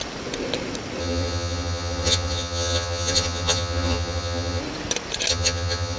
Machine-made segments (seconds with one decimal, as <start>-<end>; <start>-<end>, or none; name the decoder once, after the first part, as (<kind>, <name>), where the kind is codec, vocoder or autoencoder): 1.0-4.6 (vocoder, HiFi-GAN); 5.3-6.0